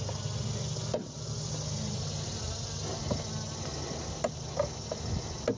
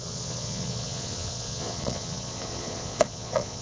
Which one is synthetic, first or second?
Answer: second